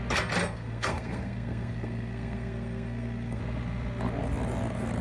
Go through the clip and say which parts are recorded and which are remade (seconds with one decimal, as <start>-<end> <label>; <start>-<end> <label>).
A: 0.0-0.4 recorded; 0.4-3.4 remade; 3.4-5.0 recorded